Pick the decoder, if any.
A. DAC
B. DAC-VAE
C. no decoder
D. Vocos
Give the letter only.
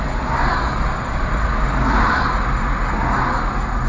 C